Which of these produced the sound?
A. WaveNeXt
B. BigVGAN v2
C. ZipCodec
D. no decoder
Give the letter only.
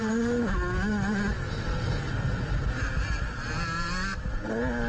D